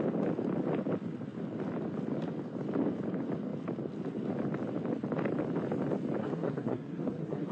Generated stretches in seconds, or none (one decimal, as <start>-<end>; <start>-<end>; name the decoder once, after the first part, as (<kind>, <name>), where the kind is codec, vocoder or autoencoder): 6.2-7.5 (codec, SNAC)